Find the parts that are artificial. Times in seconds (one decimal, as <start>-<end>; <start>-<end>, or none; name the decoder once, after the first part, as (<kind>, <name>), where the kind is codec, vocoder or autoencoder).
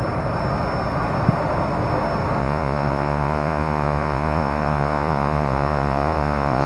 2.4-6.7 (vocoder, Vocos)